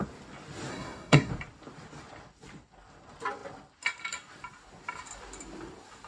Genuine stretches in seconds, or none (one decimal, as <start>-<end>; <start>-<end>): 0.0-0.7; 1.3-6.1